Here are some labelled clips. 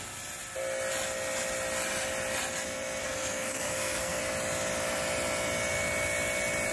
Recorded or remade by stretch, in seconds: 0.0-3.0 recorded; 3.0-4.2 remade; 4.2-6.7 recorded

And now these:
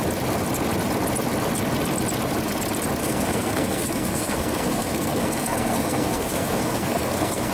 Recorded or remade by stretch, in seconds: 0.0-3.0 recorded; 3.0-7.5 remade

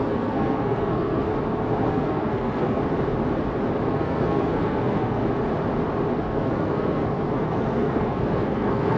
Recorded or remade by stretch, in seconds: 0.0-1.3 remade; 1.3-1.9 recorded; 1.9-2.8 remade; 2.8-3.9 recorded; 3.9-5.2 remade; 5.2-6.1 recorded; 6.1-9.0 remade

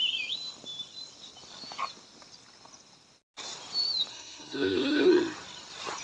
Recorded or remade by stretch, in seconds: 0.0-4.1 recorded; 4.1-5.1 remade; 5.1-6.0 recorded

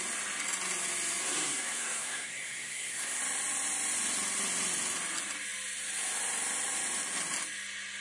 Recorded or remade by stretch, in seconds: 0.0-1.2 recorded; 1.2-3.2 remade; 3.2-8.0 recorded

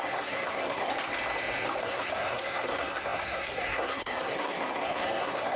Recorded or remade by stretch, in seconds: 0.0-0.9 remade; 0.9-1.8 recorded; 1.8-5.6 remade

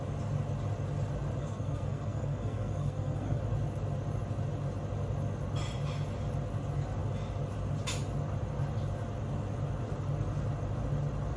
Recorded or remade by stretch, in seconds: 0.0-1.4 recorded; 1.4-3.4 remade; 3.4-11.4 recorded

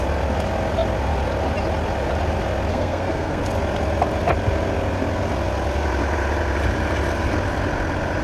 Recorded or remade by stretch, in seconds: 0.0-2.7 recorded; 2.7-3.4 remade; 3.4-8.2 recorded